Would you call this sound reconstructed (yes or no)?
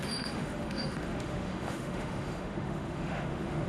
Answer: yes